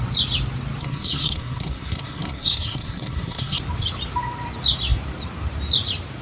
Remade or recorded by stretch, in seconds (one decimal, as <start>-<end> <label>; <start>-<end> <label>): 0.0-0.8 recorded; 0.8-3.6 remade; 3.6-6.2 recorded